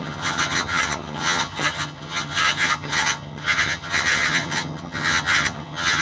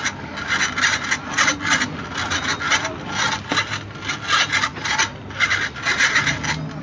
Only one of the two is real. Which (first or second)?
second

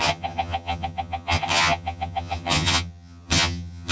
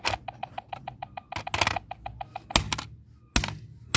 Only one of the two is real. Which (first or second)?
second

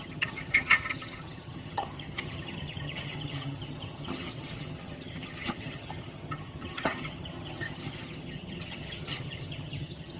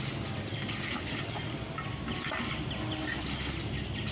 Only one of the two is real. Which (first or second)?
second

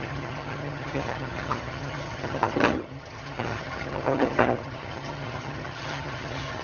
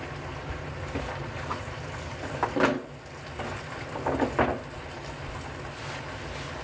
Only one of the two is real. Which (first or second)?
second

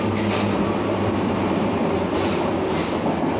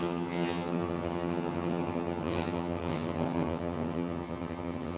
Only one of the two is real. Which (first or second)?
first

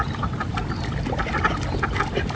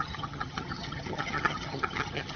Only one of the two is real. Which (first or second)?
first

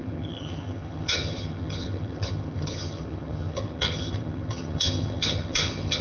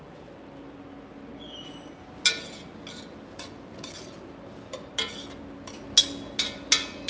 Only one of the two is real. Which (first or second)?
second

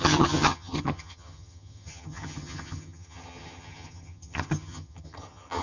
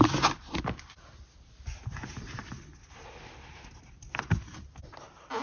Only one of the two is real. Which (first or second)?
second